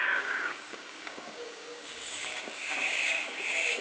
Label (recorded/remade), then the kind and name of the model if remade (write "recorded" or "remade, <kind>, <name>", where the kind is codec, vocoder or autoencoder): remade, codec, DAC